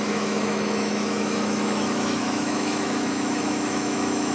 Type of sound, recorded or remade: remade